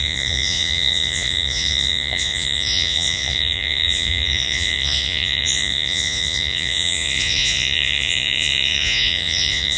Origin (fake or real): fake